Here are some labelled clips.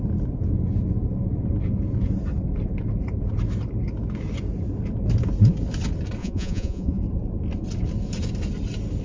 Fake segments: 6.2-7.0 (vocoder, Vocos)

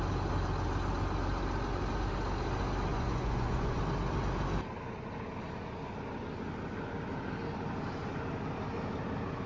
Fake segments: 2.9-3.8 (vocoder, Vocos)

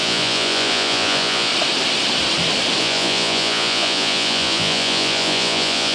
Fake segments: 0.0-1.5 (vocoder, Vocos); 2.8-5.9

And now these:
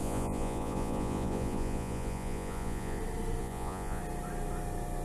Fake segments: 0.0-3.0 (vocoder, Vocos); 3.4-4.0

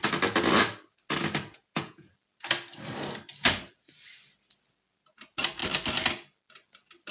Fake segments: 1.5-2.1 (vocoder, Vocos)

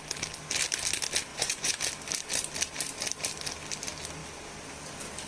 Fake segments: 1.3-1.8 (vocoder, Vocos)

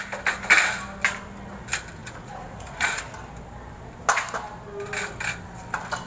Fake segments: 2.0-3.0 (vocoder, Vocos)